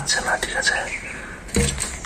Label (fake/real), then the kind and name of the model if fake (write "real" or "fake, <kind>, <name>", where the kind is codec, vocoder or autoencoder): real